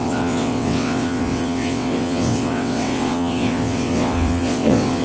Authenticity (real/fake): fake